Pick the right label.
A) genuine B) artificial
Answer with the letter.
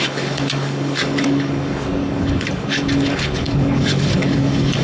B